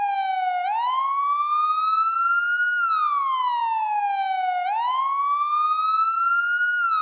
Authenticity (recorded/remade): recorded